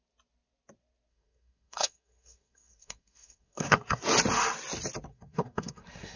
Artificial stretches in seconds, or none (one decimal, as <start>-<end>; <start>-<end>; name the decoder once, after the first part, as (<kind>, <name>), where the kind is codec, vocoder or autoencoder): 1.1-4.0 (codec, SNAC); 5.1-6.2